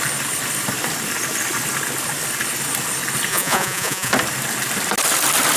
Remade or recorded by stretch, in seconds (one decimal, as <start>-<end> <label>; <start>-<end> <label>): 0.0-3.3 recorded; 3.3-4.1 remade; 4.1-5.6 recorded